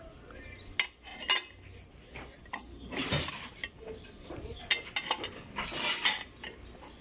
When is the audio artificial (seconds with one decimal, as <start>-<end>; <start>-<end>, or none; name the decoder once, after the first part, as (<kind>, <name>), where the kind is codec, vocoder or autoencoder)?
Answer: none